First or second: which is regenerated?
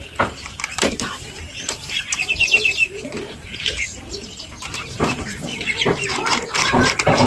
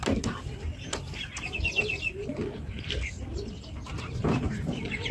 first